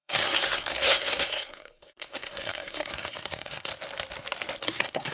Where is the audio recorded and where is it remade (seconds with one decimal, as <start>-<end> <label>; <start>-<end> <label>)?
0.0-3.7 remade; 3.7-4.6 recorded; 4.6-5.1 remade